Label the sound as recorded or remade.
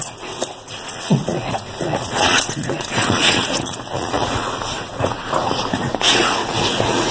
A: remade